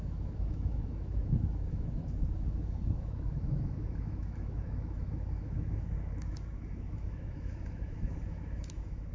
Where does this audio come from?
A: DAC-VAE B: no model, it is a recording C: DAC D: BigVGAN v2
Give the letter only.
A